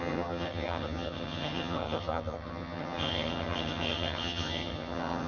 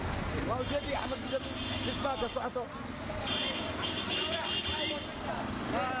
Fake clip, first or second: first